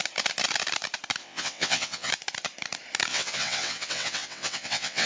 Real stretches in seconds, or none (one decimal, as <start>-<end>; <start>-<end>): 0.0-1.2; 2.1-3.1

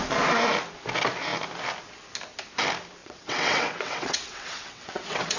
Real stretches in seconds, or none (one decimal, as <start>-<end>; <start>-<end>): 0.0-3.0

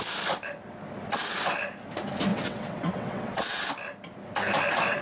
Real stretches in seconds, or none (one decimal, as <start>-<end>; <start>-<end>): 0.0-2.3; 3.7-5.0

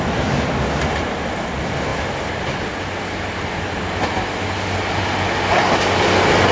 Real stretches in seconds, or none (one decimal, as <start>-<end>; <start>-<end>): 0.0-6.5

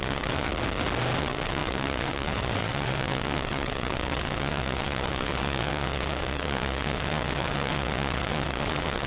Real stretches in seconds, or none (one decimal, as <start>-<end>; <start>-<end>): 0.5-1.2

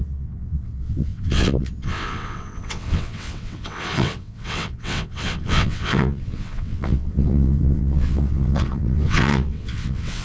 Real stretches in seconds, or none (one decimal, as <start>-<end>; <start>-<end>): none

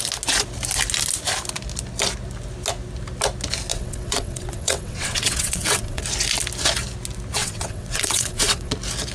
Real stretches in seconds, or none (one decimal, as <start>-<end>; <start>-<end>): 0.0-3.7; 6.0-7.4; 8.7-9.1

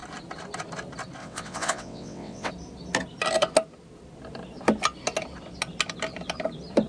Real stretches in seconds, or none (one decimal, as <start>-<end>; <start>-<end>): 0.0-1.2; 2.5-6.9